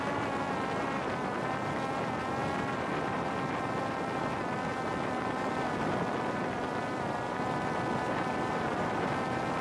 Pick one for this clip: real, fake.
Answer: real